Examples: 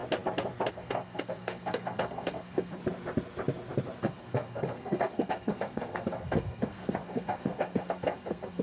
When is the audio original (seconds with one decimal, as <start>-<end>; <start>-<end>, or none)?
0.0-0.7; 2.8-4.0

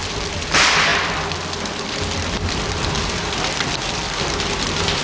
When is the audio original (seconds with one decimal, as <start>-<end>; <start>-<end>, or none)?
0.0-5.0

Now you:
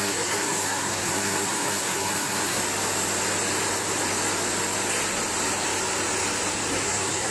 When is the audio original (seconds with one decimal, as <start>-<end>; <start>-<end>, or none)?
2.6-6.7

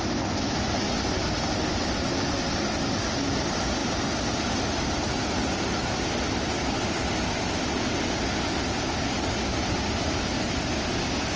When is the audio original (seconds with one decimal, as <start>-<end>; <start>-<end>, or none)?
0.0-11.4

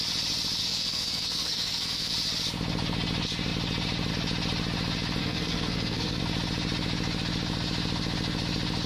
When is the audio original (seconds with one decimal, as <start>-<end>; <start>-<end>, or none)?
0.0-0.6; 2.1-5.2; 6.2-8.9

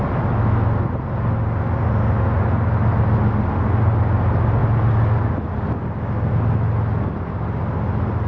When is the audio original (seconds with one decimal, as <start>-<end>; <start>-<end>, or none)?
0.0-8.3

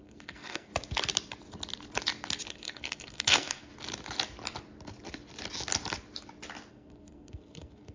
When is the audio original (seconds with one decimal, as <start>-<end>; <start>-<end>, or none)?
0.7-2.5; 3.7-6.7